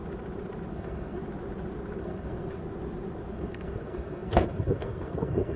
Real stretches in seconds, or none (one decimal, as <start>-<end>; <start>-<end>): 0.0-0.7; 1.2-2.0; 2.6-3.3